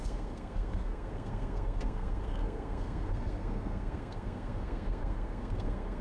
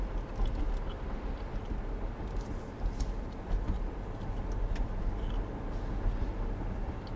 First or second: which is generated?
first